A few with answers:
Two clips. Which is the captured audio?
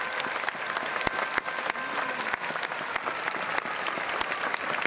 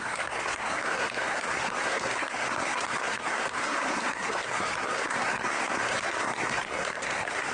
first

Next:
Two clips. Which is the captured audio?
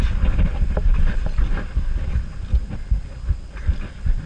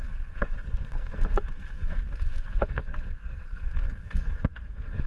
first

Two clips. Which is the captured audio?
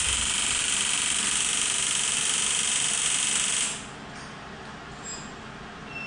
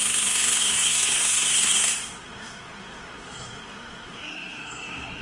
first